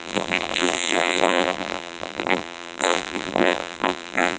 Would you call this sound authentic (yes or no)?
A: no